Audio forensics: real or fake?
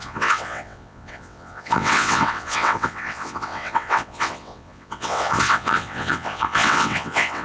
fake